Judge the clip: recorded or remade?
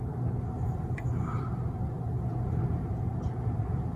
recorded